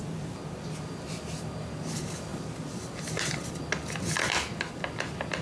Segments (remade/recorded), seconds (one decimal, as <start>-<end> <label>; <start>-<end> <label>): 0.0-5.4 recorded